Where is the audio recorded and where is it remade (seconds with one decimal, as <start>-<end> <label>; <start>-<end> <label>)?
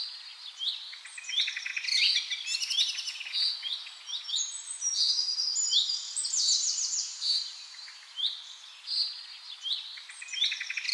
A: 0.0-1.7 remade; 1.7-4.3 recorded; 4.3-5.4 remade; 5.4-5.9 recorded; 5.9-10.9 remade